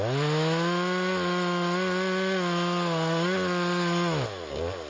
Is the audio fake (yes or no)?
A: no